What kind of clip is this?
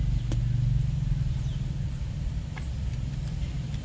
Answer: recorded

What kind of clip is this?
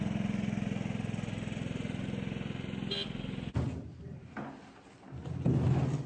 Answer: recorded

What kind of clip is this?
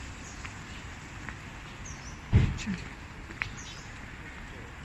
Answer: recorded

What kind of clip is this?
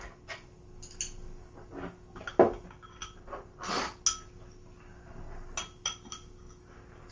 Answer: recorded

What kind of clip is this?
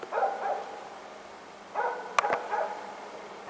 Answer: recorded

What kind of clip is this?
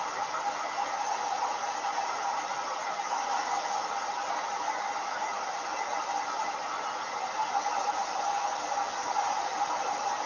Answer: recorded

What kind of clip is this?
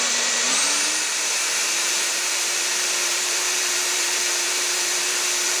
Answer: remade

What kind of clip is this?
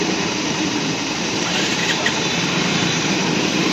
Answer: remade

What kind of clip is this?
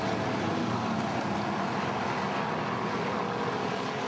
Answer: recorded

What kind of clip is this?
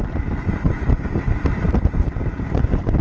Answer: remade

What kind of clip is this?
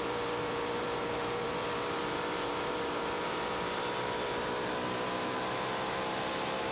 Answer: remade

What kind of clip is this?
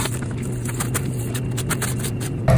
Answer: recorded